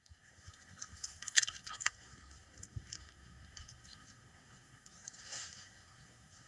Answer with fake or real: fake